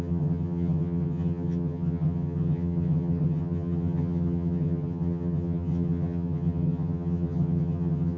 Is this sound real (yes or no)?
no